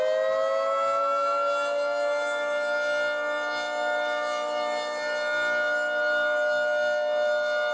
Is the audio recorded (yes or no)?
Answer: yes